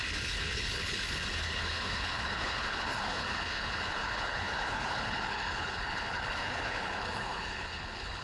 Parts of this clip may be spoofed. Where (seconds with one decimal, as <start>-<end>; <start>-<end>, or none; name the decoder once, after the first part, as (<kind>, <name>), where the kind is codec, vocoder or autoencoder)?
0.0-8.2 (codec, HILCodec)